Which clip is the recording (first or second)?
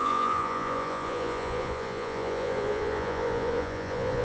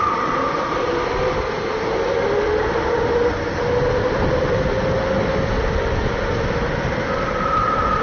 second